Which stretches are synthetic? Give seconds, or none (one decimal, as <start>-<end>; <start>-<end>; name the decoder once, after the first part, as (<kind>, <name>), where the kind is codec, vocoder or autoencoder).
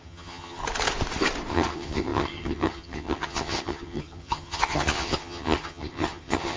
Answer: 0.0-0.6 (vocoder, HiFi-GAN); 1.5-6.6